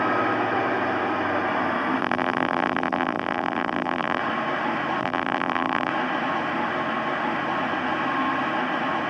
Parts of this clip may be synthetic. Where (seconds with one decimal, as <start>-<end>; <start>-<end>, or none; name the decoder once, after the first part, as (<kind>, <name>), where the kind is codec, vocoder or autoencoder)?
2.0-4.2 (vocoder, BigVGAN v2); 5.0-5.9